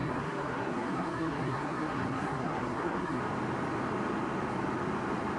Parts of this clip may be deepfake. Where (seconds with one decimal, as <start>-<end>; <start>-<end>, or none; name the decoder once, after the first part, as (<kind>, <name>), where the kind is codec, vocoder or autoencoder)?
0.0-3.2 (codec, SNAC)